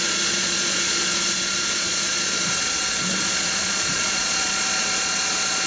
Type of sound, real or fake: fake